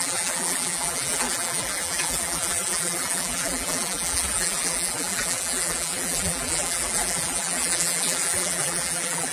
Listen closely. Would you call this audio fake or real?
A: fake